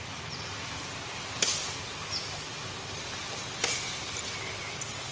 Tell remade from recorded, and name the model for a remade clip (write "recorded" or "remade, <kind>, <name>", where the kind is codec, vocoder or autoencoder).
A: recorded